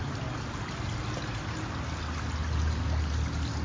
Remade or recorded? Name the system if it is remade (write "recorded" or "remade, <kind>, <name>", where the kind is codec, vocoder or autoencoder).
recorded